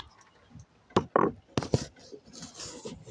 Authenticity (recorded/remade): recorded